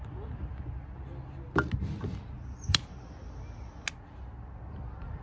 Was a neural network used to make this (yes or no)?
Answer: no